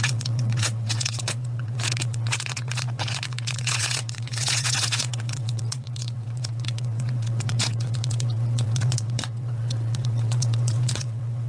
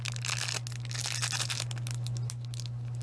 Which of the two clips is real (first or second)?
second